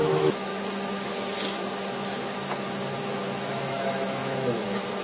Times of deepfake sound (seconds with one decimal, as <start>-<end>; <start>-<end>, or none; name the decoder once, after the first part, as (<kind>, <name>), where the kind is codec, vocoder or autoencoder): 0.0-0.5 (autoencoder, DAC-VAE); 3.0-5.0